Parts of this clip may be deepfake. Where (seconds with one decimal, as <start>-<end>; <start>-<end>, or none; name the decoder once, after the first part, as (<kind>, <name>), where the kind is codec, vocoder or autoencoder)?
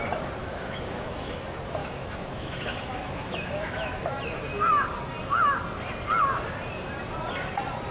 0.4-1.4 (autoencoder, DAC-VAE); 1.8-4.1